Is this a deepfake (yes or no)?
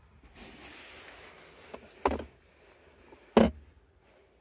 no